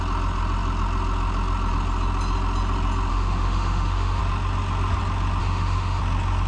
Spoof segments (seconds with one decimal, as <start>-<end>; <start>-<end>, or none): 3.1-4.2; 5.4-6.0